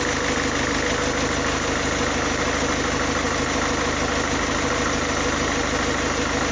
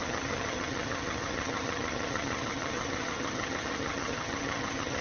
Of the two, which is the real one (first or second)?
first